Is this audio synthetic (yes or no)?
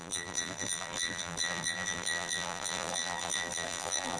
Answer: yes